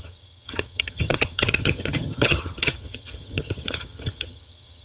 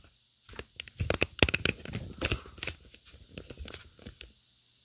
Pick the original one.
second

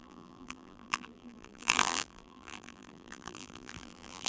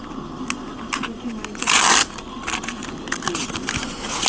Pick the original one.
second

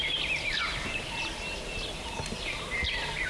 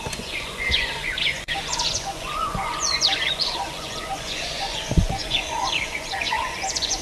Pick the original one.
first